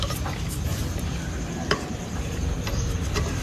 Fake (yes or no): yes